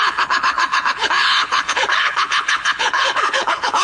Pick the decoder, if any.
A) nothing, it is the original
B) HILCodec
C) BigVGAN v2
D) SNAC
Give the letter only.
B